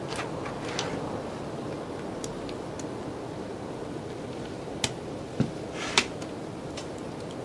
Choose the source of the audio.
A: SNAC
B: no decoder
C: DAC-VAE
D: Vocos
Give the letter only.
B